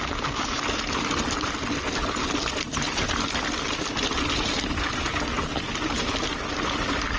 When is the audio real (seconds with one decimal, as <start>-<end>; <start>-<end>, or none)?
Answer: 0.0-5.5; 6.1-7.2